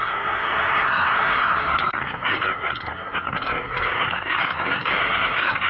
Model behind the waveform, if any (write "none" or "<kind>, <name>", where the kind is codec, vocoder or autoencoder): codec, SNAC